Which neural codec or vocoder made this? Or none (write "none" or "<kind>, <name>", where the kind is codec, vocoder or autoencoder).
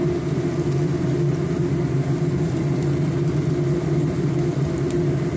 none